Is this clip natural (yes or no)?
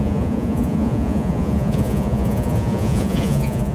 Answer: no